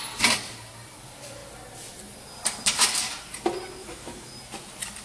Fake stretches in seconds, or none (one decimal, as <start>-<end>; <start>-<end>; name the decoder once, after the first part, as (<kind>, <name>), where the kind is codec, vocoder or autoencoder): 3.8-4.3 (autoencoder, DAC-VAE)